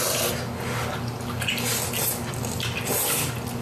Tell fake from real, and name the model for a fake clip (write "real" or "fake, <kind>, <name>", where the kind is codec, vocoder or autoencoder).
real